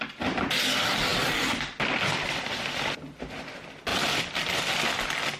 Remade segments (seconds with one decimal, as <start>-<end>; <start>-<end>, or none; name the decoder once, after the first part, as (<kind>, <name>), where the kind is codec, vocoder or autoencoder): none